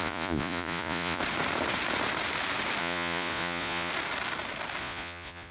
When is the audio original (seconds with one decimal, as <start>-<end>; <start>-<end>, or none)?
1.2-2.8; 3.9-4.8